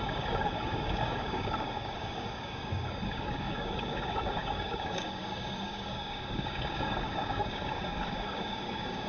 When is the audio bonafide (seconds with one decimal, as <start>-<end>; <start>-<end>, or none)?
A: none